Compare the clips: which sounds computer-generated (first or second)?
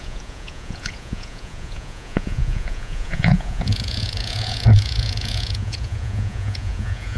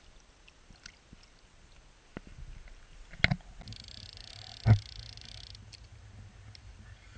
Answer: first